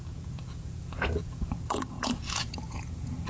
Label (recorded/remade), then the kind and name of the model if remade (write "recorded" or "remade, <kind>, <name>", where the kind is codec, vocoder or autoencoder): remade, vocoder, Vocos